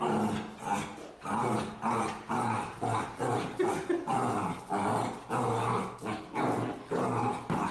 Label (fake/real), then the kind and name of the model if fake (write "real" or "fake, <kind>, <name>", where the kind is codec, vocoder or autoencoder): real